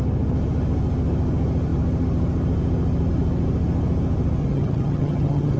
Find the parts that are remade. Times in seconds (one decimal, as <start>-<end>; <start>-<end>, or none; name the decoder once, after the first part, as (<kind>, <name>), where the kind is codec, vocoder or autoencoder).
4.4-5.6 (vocoder, HiFi-GAN)